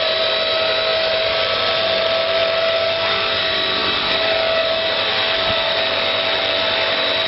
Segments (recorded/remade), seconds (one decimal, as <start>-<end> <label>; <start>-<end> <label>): 0.0-0.9 remade; 0.9-1.7 recorded; 1.7-2.4 remade; 2.4-3.4 recorded; 3.4-7.3 remade